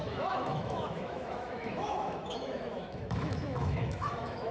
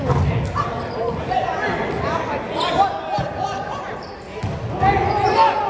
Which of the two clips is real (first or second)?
second